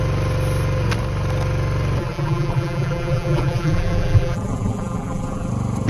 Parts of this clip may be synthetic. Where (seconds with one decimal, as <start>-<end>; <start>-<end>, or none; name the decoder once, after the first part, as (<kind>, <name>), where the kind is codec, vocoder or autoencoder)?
2.0-5.5 (vocoder, BigVGAN v2)